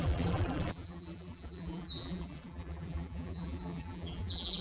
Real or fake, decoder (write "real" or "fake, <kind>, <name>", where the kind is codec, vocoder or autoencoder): fake, vocoder, BigVGAN v2